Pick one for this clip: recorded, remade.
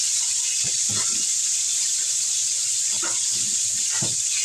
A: remade